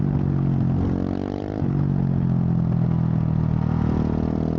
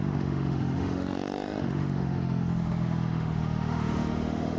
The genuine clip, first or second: first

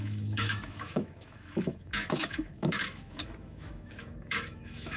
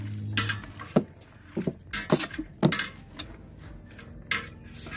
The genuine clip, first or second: second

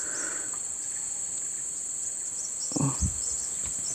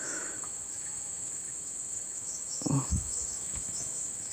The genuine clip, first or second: first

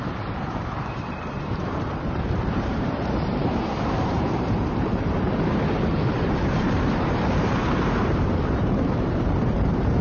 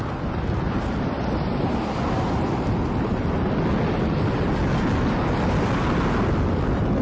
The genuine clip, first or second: second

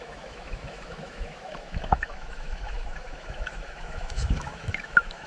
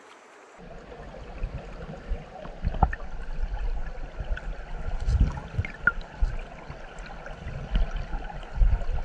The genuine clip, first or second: second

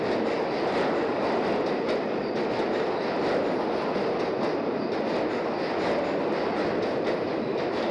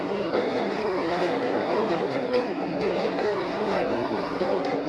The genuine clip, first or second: first